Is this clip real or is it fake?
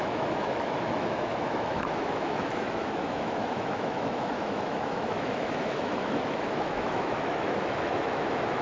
fake